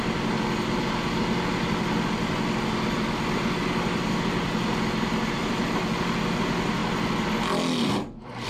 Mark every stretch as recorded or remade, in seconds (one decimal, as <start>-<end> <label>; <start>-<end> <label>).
0.0-8.5 recorded